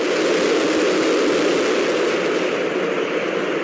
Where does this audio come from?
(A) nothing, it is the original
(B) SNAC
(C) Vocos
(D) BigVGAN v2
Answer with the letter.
A